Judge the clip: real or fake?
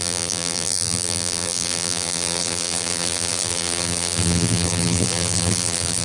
fake